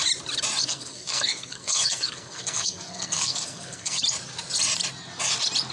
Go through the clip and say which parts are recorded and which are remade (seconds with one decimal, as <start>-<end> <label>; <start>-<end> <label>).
0.0-0.6 recorded; 0.6-4.0 remade; 4.0-5.7 recorded